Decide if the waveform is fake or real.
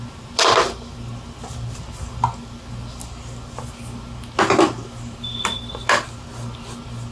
real